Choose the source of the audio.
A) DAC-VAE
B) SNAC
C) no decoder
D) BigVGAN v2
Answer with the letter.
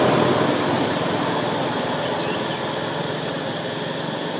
C